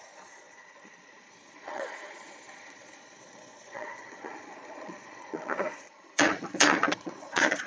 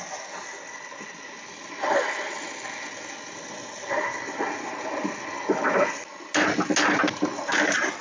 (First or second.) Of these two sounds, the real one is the second